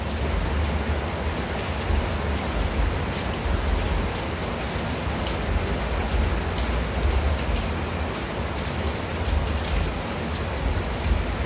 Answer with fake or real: real